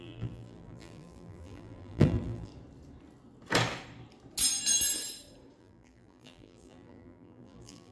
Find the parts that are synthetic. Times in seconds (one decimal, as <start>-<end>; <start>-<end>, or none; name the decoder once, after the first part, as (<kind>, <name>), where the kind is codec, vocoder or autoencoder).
0.0-2.5 (vocoder, BigVGAN v2); 5.6-7.9

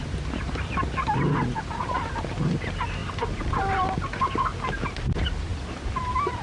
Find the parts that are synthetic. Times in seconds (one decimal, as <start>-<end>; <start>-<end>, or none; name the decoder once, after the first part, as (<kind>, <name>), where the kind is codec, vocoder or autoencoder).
3.0-3.9 (vocoder, BigVGAN v2)

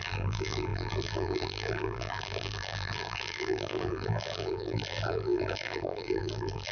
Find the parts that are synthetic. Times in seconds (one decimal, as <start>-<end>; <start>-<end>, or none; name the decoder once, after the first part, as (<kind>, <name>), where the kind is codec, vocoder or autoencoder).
0.0-6.7 (vocoder, BigVGAN v2)

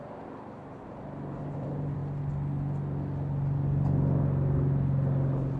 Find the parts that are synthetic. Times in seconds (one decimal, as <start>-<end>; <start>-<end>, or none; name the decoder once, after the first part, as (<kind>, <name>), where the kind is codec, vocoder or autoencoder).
0.0-2.0 (vocoder, BigVGAN v2)